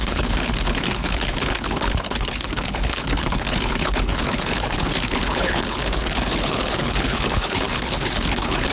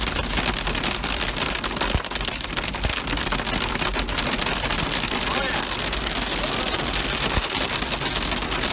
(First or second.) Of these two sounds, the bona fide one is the second